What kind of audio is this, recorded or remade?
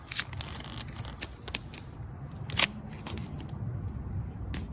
recorded